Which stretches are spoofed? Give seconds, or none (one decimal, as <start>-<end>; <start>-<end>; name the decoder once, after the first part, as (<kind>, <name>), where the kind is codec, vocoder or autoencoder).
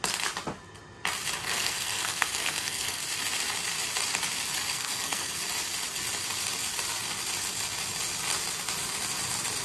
1.4-3.0 (codec, SNAC); 4.7-5.4